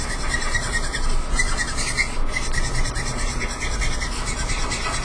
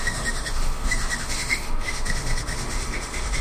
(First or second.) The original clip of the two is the first